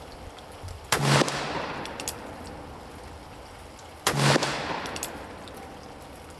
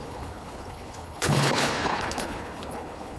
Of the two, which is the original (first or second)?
first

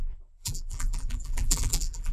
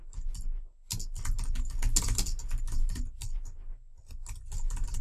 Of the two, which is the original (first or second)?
second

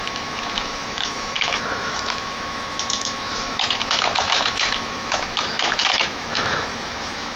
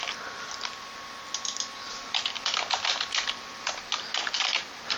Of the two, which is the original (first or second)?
second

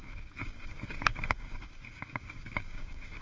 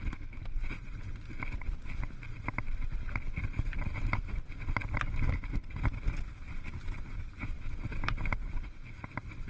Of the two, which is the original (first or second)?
second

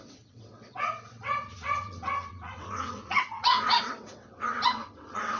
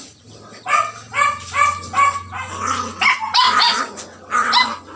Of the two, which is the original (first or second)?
second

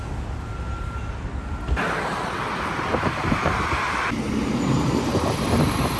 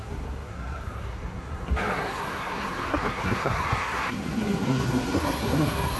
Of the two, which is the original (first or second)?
first